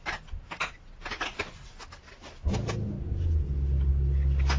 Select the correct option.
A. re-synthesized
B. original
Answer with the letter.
B